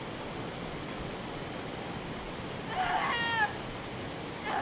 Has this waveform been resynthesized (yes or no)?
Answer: no